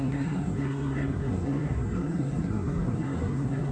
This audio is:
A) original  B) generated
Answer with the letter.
B